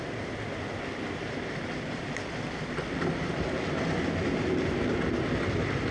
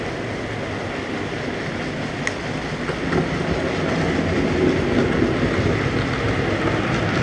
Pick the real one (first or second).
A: second